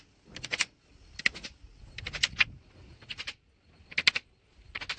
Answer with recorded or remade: recorded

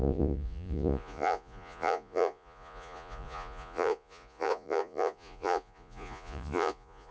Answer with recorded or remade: remade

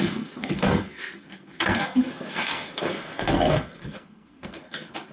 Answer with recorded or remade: remade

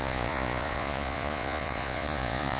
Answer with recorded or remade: remade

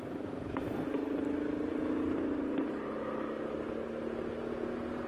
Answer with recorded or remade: recorded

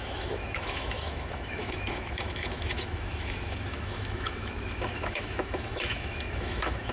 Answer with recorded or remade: remade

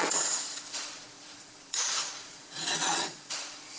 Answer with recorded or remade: remade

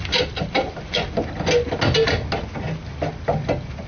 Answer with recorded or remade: recorded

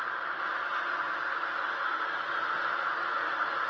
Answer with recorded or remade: recorded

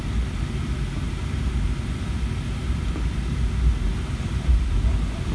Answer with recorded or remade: recorded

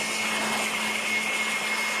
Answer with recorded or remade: recorded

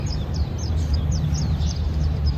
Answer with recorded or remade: remade